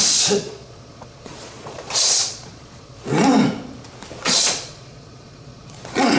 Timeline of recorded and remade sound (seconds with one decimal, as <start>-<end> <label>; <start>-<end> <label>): 0.0-3.1 remade; 3.1-4.2 recorded; 4.2-6.2 remade